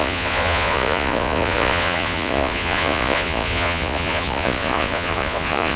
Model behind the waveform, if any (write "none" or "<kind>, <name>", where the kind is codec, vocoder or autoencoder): vocoder, Vocos